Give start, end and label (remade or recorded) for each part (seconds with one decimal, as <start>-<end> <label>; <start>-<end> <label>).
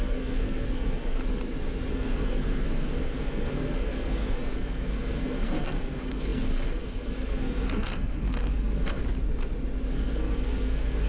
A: 0.0-1.2 remade; 1.2-1.9 recorded; 1.9-9.0 remade; 9.0-9.9 recorded; 9.9-11.1 remade